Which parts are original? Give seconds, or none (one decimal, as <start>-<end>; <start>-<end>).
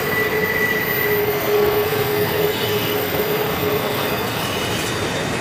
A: 0.0-1.2; 4.4-5.4